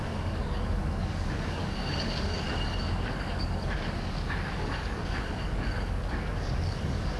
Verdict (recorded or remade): remade